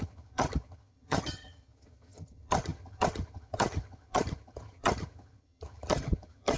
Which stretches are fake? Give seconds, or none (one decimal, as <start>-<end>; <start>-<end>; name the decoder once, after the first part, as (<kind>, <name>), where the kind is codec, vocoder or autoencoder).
0.0-6.6 (vocoder, HiFi-GAN)